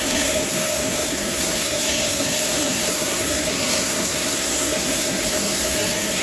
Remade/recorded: remade